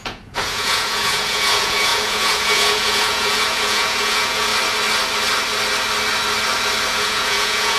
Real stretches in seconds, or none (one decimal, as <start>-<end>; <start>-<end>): 4.5-6.9